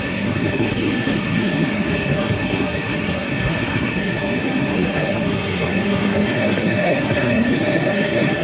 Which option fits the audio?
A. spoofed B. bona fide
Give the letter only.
A